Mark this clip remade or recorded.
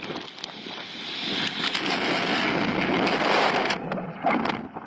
recorded